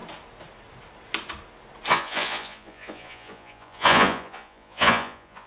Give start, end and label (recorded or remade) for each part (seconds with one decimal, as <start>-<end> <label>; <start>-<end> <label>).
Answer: 0.0-1.9 recorded; 1.9-5.5 remade